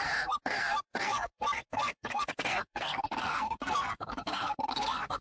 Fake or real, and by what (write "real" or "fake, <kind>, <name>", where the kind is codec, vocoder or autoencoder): fake, codec, SNAC